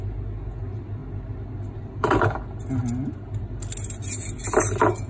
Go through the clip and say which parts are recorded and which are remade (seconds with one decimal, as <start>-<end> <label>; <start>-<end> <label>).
0.0-5.1 recorded

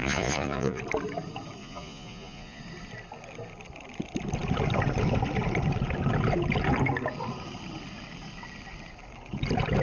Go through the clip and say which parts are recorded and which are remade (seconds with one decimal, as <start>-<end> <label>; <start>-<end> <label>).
0.0-0.8 remade; 0.8-1.6 recorded; 1.6-2.6 remade; 2.6-9.8 recorded

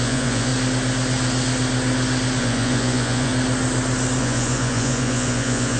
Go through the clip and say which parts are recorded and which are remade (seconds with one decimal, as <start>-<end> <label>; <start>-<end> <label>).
0.0-0.5 remade; 0.5-2.4 recorded; 2.4-3.3 remade; 3.3-4.2 recorded; 4.2-5.8 remade

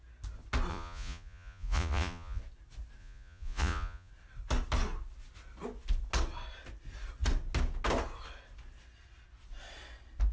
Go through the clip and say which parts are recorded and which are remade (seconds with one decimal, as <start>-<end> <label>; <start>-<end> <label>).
0.0-0.7 recorded; 0.7-2.4 remade; 2.4-3.0 recorded; 3.0-4.1 remade; 4.1-10.3 recorded

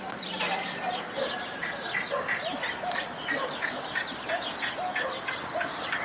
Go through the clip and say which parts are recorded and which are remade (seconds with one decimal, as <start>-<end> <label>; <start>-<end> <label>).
0.0-6.0 recorded